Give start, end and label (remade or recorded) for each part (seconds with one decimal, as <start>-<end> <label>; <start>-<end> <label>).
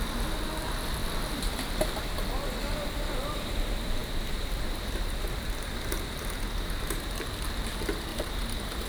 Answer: 0.0-4.0 recorded; 4.0-5.7 remade; 5.7-8.1 recorded; 8.1-8.9 remade